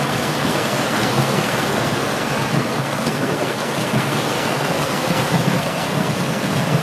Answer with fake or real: fake